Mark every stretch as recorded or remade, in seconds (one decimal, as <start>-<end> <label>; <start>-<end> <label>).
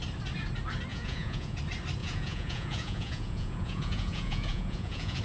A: 0.0-0.9 recorded; 0.9-1.6 remade; 1.6-2.0 recorded; 2.0-5.2 remade